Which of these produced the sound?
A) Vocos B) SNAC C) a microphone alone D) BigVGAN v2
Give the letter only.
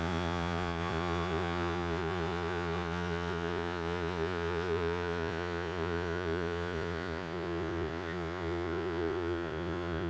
A